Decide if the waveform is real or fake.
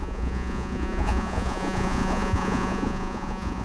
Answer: fake